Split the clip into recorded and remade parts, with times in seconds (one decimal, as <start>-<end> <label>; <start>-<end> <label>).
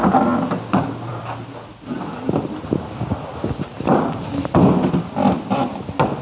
0.0-6.2 recorded